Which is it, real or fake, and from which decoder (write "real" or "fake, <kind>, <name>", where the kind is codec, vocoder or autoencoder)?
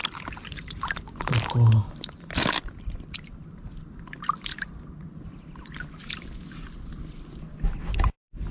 real